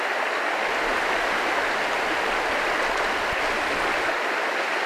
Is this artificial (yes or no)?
no